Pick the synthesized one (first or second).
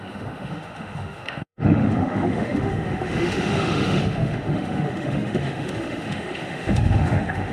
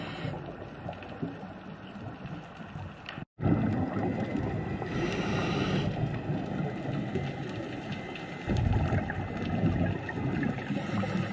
first